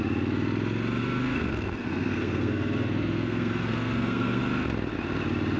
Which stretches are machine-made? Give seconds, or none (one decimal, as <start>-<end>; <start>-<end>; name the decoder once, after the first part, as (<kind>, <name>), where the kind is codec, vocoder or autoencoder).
1.0-4.4 (codec, SNAC)